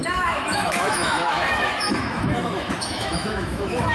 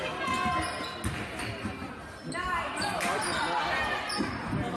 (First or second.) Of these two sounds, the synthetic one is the first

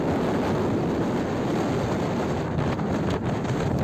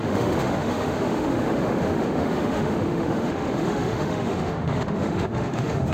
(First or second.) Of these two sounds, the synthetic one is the second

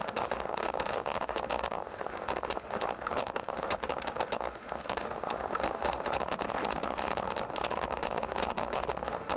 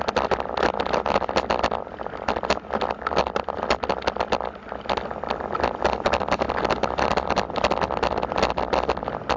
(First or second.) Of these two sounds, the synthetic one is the first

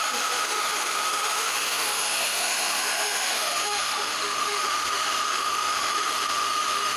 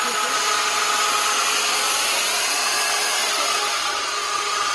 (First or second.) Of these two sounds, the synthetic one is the first